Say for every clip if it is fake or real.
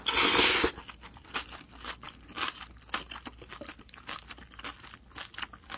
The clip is real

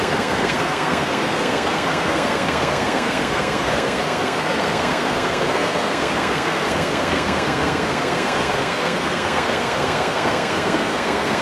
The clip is fake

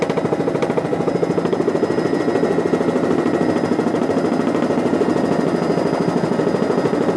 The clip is real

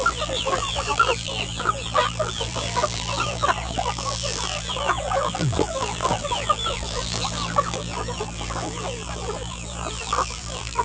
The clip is fake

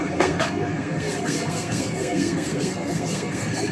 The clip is fake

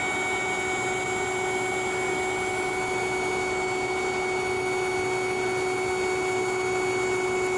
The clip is real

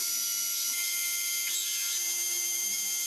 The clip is real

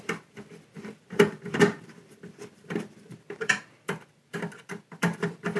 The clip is fake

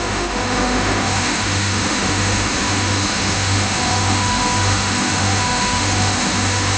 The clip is fake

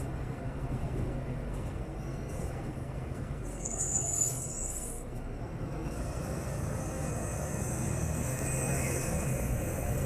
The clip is fake